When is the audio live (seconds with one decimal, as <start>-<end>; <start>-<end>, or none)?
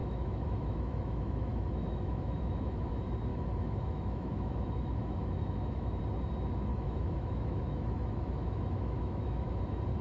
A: 2.9-3.3; 6.0-6.7; 9.6-10.0